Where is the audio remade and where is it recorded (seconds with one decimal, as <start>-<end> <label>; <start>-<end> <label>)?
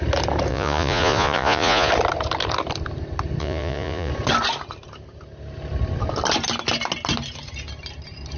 0.0-0.5 recorded; 0.5-1.9 remade; 1.9-3.4 recorded; 3.4-4.1 remade; 4.1-8.4 recorded